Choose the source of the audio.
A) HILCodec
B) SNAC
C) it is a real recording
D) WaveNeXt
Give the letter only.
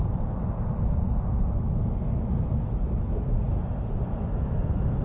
C